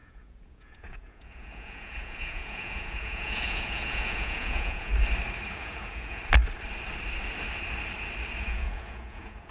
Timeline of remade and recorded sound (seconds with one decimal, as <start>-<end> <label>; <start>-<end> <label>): 0.0-4.9 remade; 4.9-5.6 recorded; 5.6-6.2 remade; 6.2-8.4 recorded; 8.4-9.5 remade